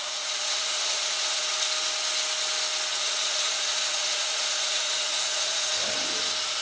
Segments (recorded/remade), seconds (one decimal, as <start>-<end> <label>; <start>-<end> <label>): 0.0-1.5 remade; 1.5-2.9 recorded; 2.9-5.7 remade; 5.7-6.6 recorded